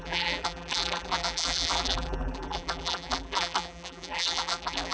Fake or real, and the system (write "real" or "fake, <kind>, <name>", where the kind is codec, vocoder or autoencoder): fake, vocoder, BigVGAN v2